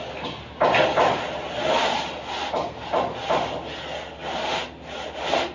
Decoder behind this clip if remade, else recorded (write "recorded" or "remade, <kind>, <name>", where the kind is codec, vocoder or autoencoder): recorded